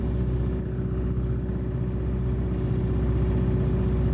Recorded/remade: recorded